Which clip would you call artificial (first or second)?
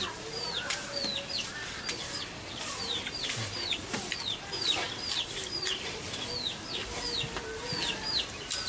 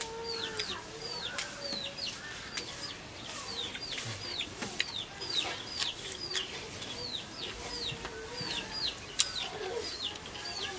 first